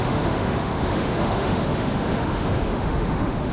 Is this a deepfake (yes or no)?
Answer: yes